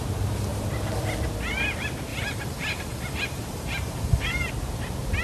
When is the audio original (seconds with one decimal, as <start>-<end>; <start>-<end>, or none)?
0.0-2.1; 4.5-5.2